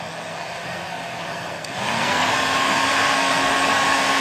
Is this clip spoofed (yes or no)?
yes